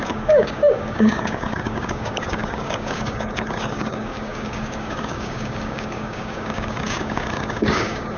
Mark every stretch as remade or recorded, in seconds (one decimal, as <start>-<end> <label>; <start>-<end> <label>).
0.0-8.2 remade